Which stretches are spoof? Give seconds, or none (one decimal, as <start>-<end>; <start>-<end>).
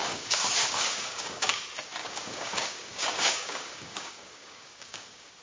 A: 0.0-1.6; 2.0-5.4